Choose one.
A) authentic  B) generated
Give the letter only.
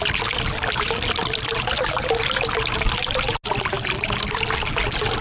A